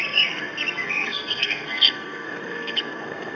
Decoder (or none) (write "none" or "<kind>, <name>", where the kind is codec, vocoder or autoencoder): codec, SNAC